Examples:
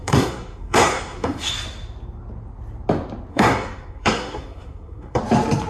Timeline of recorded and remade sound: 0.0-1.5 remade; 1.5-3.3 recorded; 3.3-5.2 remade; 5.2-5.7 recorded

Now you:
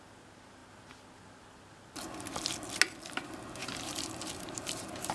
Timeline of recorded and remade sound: 0.0-3.6 recorded; 3.6-5.1 remade

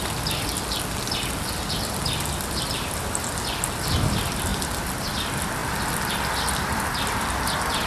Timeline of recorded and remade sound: 0.0-7.9 recorded

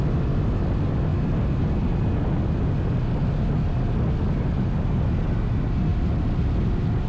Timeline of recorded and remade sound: 0.0-7.1 recorded

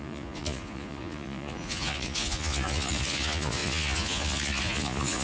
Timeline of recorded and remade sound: 0.0-5.2 remade